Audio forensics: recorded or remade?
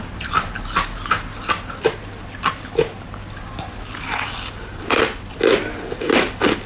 recorded